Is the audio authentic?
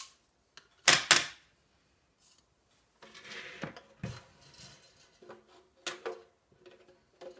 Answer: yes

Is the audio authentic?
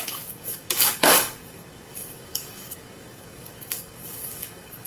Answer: no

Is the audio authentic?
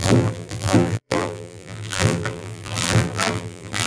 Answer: no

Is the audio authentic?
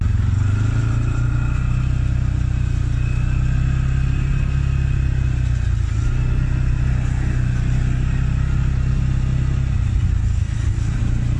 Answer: yes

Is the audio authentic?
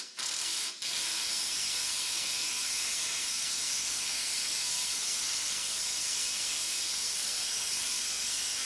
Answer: no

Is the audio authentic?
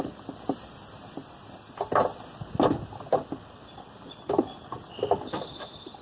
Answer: yes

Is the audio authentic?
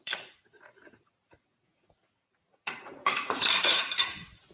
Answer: no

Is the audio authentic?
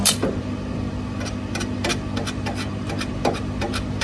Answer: yes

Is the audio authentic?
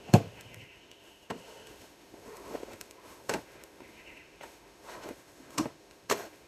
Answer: no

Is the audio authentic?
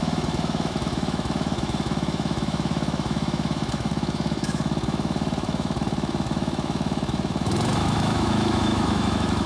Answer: no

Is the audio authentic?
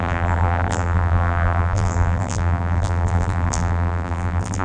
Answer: no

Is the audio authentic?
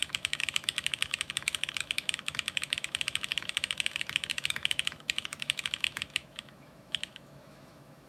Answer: no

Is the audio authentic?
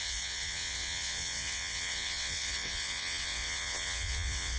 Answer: no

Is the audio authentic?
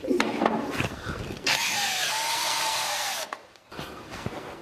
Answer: no